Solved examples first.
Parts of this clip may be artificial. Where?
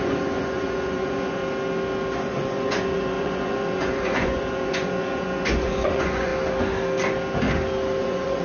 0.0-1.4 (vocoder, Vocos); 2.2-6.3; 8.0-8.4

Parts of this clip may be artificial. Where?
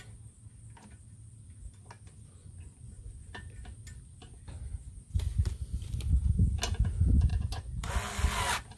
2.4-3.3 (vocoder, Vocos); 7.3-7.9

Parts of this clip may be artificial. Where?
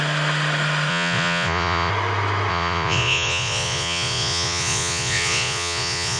0.9-1.9 (vocoder, Vocos); 2.5-6.2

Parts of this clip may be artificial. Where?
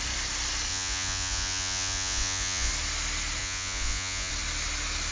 0.7-2.7 (vocoder, Vocos); 3.4-4.3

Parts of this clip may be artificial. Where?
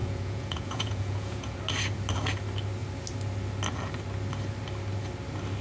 0.0-1.6 (vocoder, Vocos)